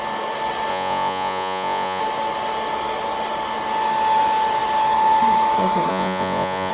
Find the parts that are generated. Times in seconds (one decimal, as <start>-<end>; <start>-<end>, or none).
0.7-2.0; 5.9-6.7